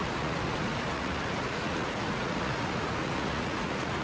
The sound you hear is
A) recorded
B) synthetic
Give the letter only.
B